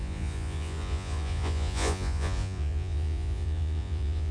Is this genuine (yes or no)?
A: no